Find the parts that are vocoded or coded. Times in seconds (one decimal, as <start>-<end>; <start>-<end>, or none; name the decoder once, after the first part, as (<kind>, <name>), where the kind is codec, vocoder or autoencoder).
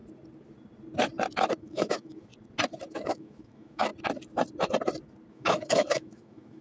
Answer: 1.6-2.3 (autoencoder, DAC-VAE); 2.9-3.9; 5.3-6.6